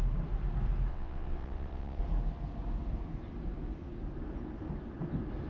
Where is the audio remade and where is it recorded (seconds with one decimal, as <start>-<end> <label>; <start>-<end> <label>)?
0.0-0.9 recorded; 0.9-2.0 remade; 2.0-5.5 recorded

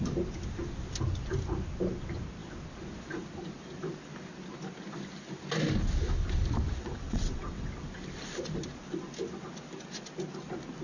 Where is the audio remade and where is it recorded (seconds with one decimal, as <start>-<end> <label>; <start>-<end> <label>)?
0.0-6.8 recorded; 6.8-7.7 remade; 7.7-10.8 recorded

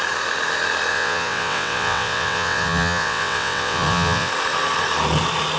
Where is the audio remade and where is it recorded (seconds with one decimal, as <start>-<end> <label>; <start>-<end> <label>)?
0.0-0.9 recorded; 0.9-4.3 remade; 4.3-5.6 recorded

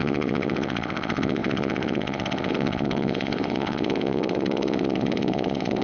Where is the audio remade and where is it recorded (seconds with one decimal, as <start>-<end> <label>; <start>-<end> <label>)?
0.0-5.8 remade

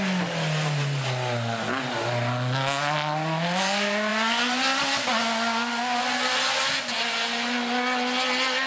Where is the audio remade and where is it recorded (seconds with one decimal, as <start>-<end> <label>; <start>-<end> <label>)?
0.0-8.7 recorded

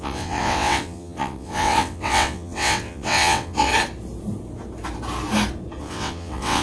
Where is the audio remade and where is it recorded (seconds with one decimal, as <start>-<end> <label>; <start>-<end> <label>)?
0.0-3.7 remade; 3.7-5.8 recorded; 5.8-6.6 remade

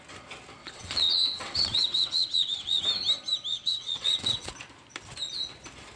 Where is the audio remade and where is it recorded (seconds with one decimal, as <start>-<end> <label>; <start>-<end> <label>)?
0.0-0.6 recorded; 0.6-2.8 remade; 2.8-3.5 recorded; 3.5-4.5 remade; 4.5-6.0 recorded

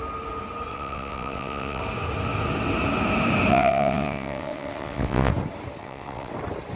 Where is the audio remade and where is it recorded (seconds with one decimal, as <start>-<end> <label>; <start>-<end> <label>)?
0.0-0.7 recorded; 0.7-1.8 remade; 1.8-3.5 recorded; 3.5-5.3 remade; 5.3-5.8 recorded; 5.8-6.3 remade; 6.3-6.8 recorded